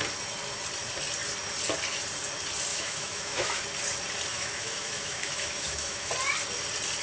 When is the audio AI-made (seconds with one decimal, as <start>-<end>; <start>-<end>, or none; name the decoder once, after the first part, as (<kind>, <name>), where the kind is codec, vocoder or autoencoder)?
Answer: 2.7-3.6 (autoencoder, DAC-VAE); 4.3-6.1